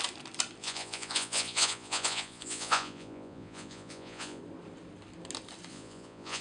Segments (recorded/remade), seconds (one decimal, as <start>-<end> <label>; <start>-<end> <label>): 0.0-0.6 recorded; 0.6-4.4 remade; 4.4-5.7 recorded; 5.7-6.4 remade